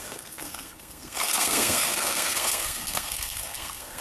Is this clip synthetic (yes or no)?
yes